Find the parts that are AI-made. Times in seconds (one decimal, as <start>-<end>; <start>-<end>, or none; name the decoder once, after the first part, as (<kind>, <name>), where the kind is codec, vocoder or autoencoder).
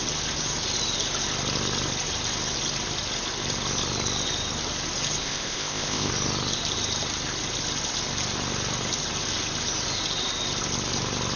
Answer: 5.2-6.1 (codec, ZipCodec)